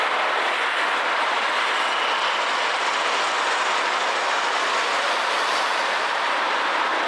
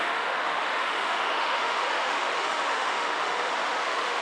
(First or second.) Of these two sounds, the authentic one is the first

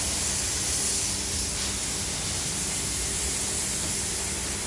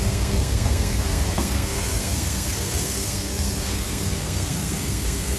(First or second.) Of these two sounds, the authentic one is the first